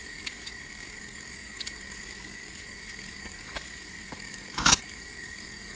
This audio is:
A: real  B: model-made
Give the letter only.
B